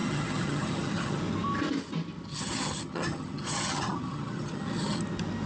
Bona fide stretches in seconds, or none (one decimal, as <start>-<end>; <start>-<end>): 1.2-2.3; 5.0-5.5